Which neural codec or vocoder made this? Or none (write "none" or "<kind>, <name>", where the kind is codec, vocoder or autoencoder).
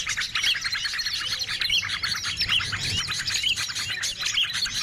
none